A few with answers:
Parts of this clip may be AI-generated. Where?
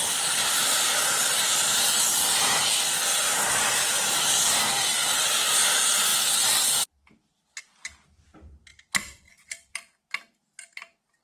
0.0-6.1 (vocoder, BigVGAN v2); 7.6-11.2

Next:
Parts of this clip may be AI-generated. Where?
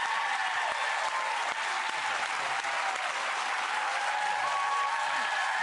4.4-5.6 (vocoder, BigVGAN v2)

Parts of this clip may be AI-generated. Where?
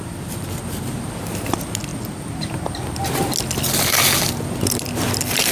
0.0-1.9 (vocoder, BigVGAN v2); 4.2-5.5